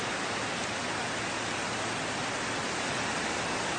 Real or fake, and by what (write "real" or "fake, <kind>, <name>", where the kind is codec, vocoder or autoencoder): real